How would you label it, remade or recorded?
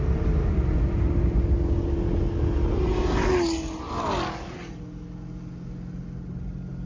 recorded